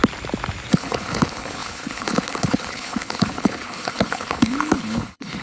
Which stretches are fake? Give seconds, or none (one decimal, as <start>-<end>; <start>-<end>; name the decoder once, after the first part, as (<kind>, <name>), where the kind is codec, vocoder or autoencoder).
0.7-5.4 (codec, HILCodec)